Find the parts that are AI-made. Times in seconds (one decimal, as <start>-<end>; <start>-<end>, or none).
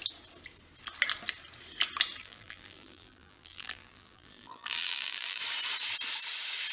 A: 2.2-5.4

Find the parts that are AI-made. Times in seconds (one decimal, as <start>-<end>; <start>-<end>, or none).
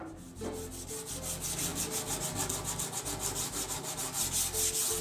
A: none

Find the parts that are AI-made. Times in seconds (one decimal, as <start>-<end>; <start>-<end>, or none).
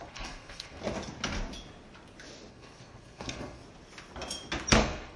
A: 0.0-0.8; 2.5-3.6; 4.7-5.2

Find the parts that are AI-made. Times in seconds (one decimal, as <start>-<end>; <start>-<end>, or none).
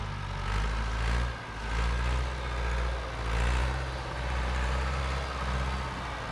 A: 3.6-5.0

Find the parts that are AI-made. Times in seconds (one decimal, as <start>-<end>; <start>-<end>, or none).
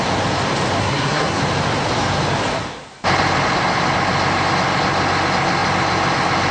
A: 0.8-1.4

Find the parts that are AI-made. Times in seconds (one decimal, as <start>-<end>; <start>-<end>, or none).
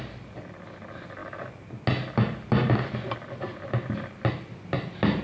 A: none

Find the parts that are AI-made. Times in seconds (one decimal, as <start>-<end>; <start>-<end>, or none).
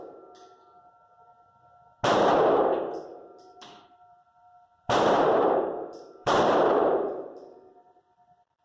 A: 3.1-8.0